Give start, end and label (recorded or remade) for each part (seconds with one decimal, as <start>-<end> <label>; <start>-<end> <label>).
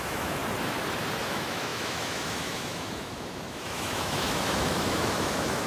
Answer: 0.0-0.4 remade; 0.4-1.2 recorded; 1.2-5.7 remade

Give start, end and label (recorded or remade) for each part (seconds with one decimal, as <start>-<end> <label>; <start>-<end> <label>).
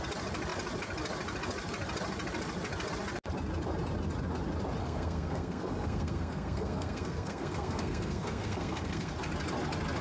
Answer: 0.0-4.8 recorded; 4.8-9.1 remade; 9.1-10.0 recorded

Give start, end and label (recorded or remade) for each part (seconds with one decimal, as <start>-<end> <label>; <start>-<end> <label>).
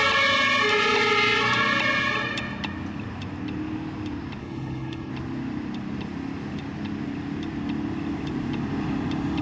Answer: 0.0-4.4 recorded; 4.4-5.1 remade; 5.1-9.4 recorded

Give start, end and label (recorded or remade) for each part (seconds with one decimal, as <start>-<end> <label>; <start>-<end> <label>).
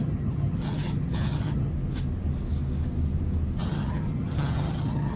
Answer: 0.0-1.7 remade; 1.7-3.6 recorded; 3.6-5.2 remade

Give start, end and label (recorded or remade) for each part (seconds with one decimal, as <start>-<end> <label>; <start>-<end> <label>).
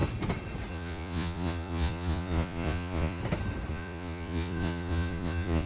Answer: 0.0-0.7 recorded; 0.7-3.2 remade; 3.2-3.7 recorded; 3.7-5.7 remade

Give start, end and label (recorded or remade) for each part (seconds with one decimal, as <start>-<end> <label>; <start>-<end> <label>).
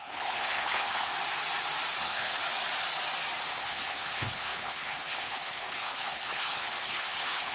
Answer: 0.0-1.1 remade; 1.1-2.0 recorded; 2.0-2.4 remade; 2.4-3.5 recorded; 3.5-7.5 remade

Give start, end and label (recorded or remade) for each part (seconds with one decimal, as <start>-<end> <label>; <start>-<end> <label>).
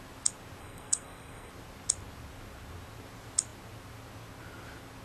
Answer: 0.0-0.6 recorded; 0.6-1.5 remade; 1.5-5.0 recorded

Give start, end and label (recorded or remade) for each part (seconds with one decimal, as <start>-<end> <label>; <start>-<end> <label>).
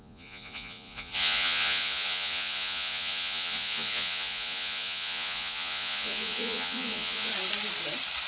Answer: 0.0-7.3 remade; 7.3-8.3 recorded